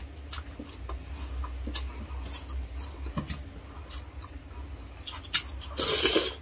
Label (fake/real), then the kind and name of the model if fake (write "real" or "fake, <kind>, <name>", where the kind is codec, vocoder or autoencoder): real